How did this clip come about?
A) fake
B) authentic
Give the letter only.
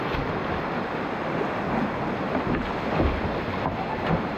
B